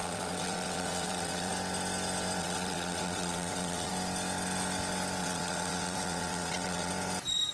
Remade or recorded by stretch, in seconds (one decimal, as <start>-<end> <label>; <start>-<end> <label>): 0.0-1.5 remade; 1.5-2.4 recorded; 2.4-3.9 remade; 3.9-5.2 recorded; 5.2-6.9 remade; 6.9-7.5 recorded